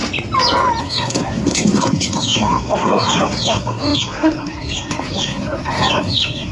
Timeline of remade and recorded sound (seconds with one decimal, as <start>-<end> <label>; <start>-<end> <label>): 0.0-0.8 recorded; 0.8-6.5 remade